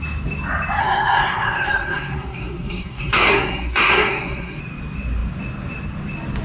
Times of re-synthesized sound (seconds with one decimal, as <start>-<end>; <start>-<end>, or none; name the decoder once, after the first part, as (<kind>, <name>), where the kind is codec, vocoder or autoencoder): 0.8-4.6 (codec, SNAC)